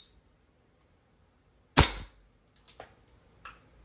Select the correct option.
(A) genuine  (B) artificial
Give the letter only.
A